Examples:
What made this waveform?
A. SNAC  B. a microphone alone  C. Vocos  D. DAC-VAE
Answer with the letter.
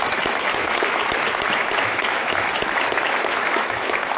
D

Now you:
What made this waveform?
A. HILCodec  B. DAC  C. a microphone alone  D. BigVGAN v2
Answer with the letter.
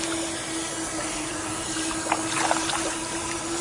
D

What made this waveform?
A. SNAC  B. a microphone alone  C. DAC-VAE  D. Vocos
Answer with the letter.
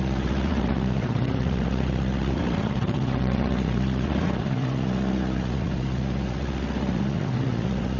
D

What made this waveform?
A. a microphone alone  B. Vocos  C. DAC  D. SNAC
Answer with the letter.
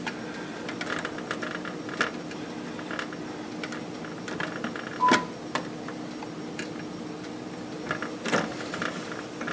A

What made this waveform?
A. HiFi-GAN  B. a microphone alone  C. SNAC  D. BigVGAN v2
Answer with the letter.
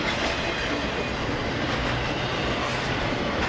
B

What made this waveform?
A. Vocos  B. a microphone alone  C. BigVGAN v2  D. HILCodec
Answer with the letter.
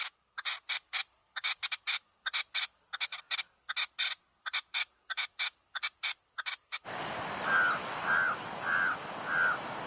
B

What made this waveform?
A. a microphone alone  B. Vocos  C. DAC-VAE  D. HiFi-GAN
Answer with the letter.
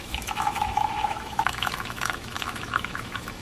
C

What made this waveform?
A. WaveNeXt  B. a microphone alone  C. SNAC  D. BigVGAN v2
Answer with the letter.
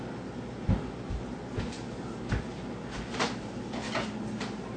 B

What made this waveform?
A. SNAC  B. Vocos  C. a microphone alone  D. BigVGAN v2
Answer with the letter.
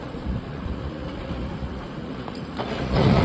B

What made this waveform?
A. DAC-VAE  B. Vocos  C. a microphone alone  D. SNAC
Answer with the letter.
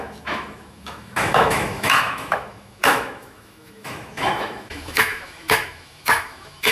A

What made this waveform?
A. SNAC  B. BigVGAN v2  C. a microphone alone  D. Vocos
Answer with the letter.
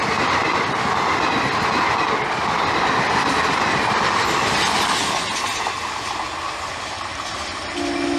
C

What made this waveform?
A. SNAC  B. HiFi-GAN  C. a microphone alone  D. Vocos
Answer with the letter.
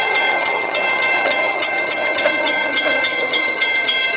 B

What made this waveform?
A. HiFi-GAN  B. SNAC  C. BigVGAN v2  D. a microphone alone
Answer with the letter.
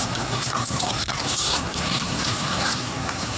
B